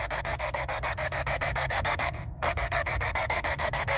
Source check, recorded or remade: remade